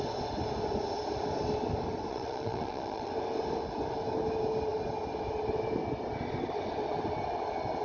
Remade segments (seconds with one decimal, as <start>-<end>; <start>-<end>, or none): 2.1-3.1